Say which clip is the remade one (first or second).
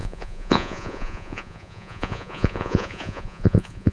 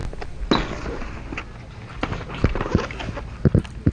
first